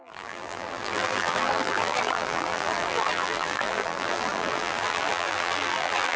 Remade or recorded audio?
remade